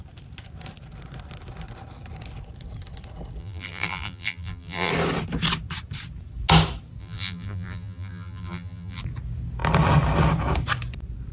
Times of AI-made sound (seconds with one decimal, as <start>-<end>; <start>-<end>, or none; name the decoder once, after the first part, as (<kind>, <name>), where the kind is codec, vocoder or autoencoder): 3.4-4.9 (vocoder, BigVGAN v2); 7.0-9.0